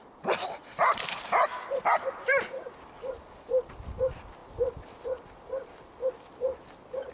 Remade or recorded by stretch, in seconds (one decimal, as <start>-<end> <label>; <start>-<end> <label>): 0.0-7.1 recorded